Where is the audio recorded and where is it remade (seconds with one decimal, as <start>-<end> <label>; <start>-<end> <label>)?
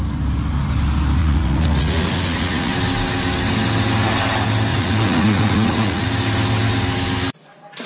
0.0-1.2 recorded; 1.2-2.7 remade; 2.7-4.7 recorded; 4.7-6.1 remade; 6.1-7.9 recorded